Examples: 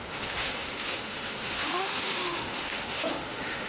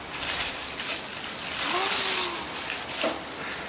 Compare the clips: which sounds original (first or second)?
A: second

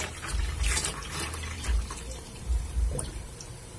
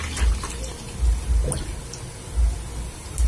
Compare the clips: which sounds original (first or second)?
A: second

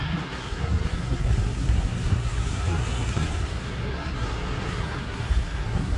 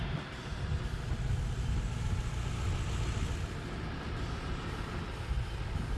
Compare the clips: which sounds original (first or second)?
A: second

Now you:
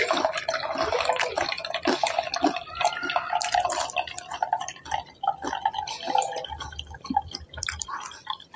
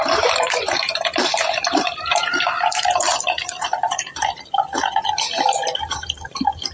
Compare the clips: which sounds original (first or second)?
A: first